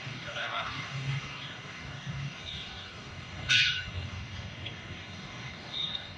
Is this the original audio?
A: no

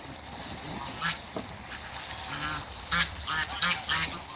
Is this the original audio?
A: yes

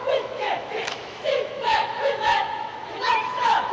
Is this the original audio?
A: no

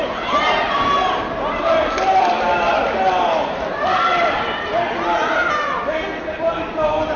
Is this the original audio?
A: no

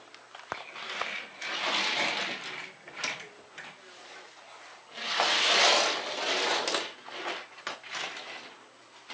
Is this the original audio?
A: yes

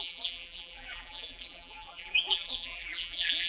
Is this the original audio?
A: no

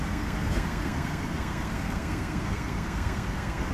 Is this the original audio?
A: no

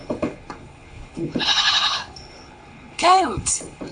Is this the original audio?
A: no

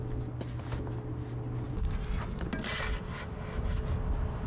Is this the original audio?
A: yes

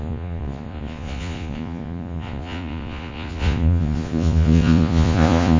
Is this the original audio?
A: no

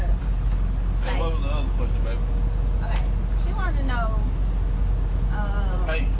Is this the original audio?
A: yes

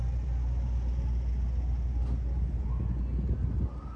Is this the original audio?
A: yes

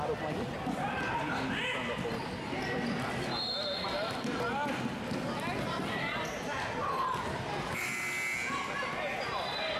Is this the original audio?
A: yes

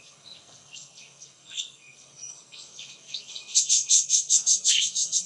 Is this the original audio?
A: no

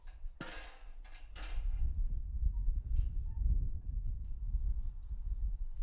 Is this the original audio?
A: yes